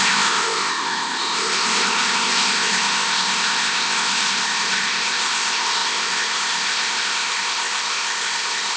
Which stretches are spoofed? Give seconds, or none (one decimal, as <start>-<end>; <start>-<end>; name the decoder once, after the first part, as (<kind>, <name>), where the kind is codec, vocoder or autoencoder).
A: 0.0-8.8 (codec, ZipCodec)